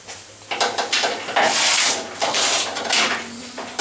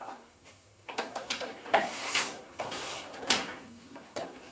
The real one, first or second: first